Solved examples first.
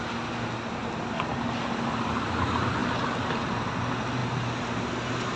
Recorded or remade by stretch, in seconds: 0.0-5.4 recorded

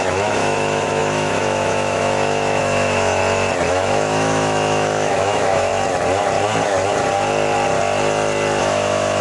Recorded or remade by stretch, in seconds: 0.0-3.2 remade; 3.2-3.7 recorded; 3.7-5.7 remade; 5.7-8.6 recorded; 8.6-9.2 remade